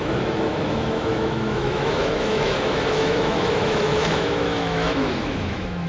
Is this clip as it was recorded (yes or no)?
no